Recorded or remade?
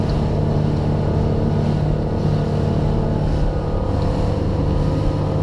recorded